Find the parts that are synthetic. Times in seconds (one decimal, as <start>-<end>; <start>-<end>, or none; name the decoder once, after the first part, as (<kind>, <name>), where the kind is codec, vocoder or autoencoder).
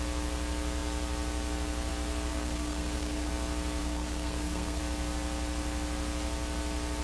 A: 2.3-3.3 (codec, SNAC); 3.8-4.8